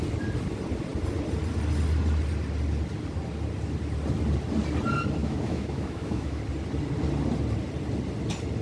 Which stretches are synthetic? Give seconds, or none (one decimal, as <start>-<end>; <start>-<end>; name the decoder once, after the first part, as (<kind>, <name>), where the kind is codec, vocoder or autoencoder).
5.2-6.4 (autoencoder, DAC-VAE)